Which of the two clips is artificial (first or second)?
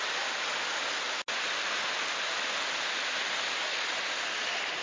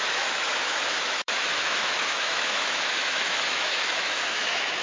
second